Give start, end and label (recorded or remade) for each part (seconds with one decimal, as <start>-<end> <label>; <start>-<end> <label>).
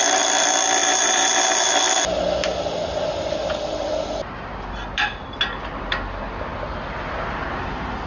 0.0-8.1 recorded